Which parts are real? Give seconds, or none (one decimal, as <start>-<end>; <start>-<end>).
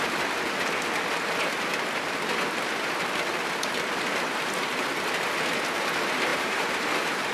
0.0-6.3